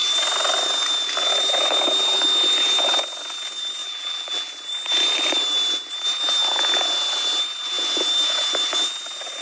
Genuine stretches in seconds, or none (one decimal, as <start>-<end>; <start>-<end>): 0.0-3.8; 4.5-9.4